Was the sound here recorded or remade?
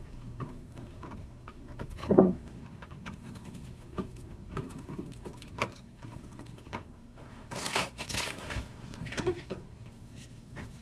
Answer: remade